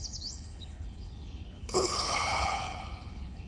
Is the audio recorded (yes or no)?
no